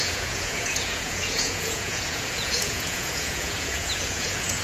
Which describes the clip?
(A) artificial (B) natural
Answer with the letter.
A